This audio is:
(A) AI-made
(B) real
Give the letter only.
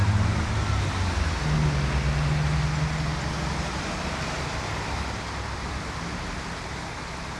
B